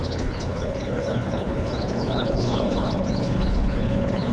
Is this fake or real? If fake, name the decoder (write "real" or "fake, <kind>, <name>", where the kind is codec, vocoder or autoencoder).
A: fake, codec, HILCodec